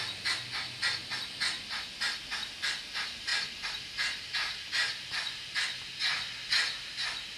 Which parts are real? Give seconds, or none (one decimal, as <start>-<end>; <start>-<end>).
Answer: 0.0-7.4